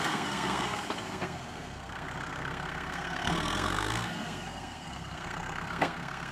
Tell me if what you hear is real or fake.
fake